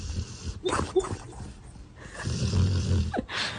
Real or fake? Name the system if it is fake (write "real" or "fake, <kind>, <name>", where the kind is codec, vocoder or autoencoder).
real